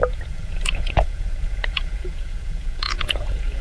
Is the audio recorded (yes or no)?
no